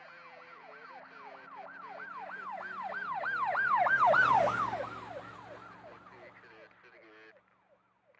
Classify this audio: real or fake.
real